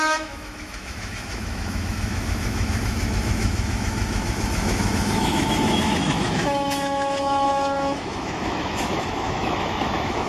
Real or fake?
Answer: fake